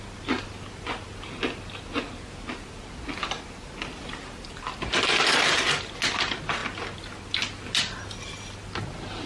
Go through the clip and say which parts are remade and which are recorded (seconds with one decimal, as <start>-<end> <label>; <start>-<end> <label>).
0.0-9.3 recorded